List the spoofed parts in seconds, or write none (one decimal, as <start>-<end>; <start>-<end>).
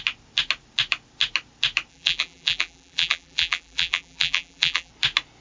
1.9-4.9